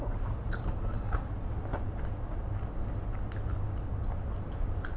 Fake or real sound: real